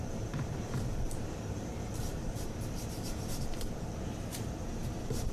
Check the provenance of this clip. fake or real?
fake